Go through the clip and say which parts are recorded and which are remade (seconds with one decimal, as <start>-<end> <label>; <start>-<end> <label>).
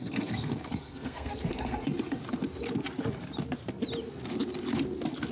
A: 0.0-2.2 remade; 2.2-5.3 recorded